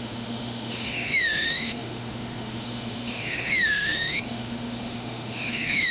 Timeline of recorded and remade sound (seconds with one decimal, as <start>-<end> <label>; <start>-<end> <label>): 0.0-5.9 remade